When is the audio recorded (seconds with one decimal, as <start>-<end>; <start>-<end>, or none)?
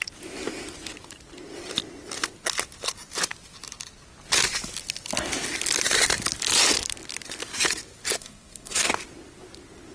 0.0-8.2; 8.9-9.9